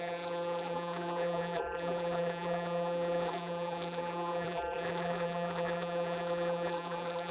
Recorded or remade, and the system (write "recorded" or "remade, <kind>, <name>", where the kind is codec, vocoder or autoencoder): remade, vocoder, BigVGAN v2